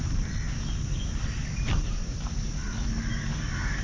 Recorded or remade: recorded